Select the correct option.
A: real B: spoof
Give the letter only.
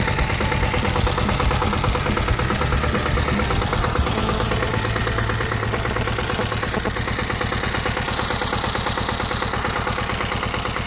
A